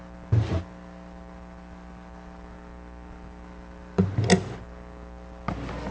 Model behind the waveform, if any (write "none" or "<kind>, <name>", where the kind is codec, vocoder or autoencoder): none